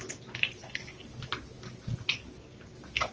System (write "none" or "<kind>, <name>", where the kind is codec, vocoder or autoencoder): none